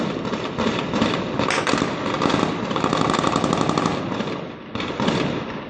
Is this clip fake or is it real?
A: real